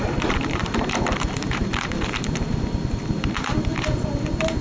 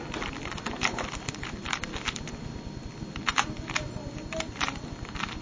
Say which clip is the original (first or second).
second